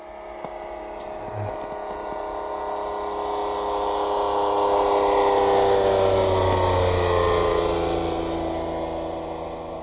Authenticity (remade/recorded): recorded